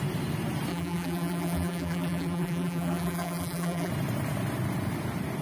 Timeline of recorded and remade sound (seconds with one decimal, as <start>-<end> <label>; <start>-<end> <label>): 0.0-0.7 recorded; 0.7-3.9 remade; 3.9-5.4 recorded